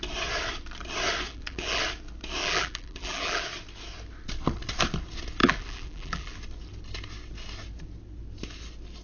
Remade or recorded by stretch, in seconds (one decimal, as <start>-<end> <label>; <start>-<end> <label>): 0.0-1.3 recorded; 1.3-1.8 remade; 1.8-2.4 recorded; 2.4-3.4 remade; 3.4-5.4 recorded; 5.4-6.3 remade; 6.3-9.0 recorded